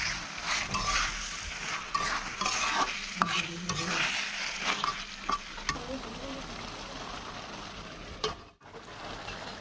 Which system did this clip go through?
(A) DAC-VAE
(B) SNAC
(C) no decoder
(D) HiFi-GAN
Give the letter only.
C